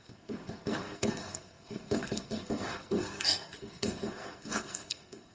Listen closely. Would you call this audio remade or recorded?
remade